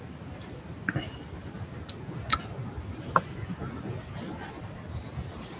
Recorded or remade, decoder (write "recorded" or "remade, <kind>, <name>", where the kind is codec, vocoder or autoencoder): recorded